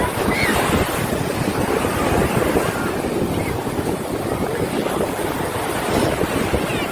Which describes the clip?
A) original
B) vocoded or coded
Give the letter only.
A